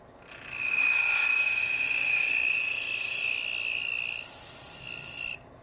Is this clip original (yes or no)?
yes